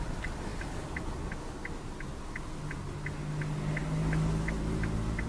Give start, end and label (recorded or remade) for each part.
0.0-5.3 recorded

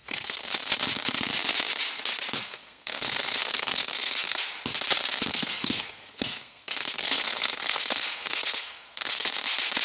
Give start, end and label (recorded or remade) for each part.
0.0-0.7 remade; 0.7-2.4 recorded; 2.4-4.4 remade; 4.4-5.3 recorded; 5.3-9.3 remade; 9.3-9.8 recorded

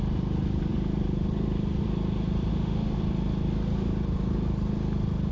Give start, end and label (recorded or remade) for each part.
0.0-2.5 recorded; 2.5-3.0 remade; 3.0-5.3 recorded

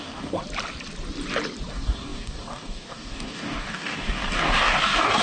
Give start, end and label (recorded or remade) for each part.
0.0-0.4 remade; 0.4-1.7 recorded; 1.7-5.2 remade

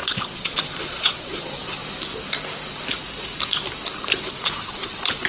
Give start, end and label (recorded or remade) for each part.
0.0-1.8 remade; 1.8-4.3 recorded; 4.3-5.3 remade